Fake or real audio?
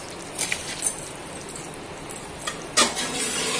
real